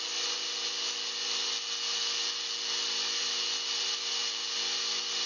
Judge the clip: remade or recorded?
recorded